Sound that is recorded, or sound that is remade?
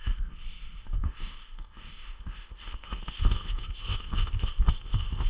remade